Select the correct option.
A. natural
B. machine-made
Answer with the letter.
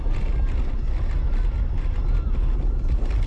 A